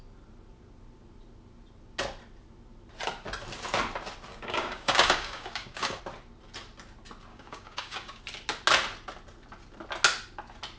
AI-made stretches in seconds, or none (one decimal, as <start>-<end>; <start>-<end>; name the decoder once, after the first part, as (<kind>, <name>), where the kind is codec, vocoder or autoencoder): 4.3-6.0 (codec, DAC); 7.3-8.2